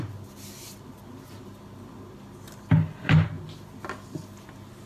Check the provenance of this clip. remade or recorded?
recorded